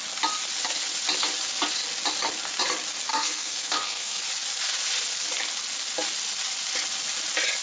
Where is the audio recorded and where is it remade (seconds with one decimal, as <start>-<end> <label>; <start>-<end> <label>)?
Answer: 0.0-3.1 recorded; 3.1-4.2 remade; 4.2-7.6 recorded